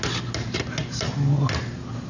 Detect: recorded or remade recorded